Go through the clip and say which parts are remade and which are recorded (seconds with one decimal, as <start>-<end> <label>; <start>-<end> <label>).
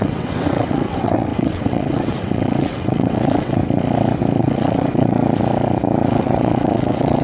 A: 0.0-3.6 remade; 3.6-4.4 recorded; 4.4-5.2 remade; 5.2-6.1 recorded; 6.1-7.2 remade